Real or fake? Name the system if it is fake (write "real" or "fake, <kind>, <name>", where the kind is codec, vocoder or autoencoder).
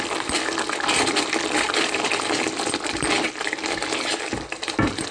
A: fake, vocoder, BigVGAN v2